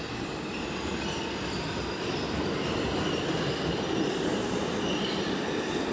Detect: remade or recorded recorded